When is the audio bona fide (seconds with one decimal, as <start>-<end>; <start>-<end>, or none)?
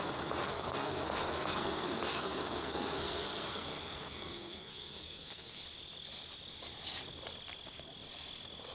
0.0-0.4; 5.6-8.7